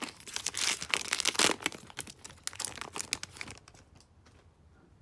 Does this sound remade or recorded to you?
recorded